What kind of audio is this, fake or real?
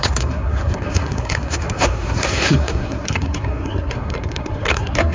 fake